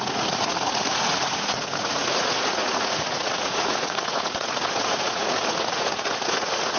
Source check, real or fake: fake